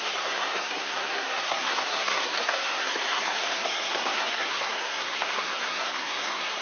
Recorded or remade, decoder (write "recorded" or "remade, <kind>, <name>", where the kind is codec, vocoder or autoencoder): remade, codec, SNAC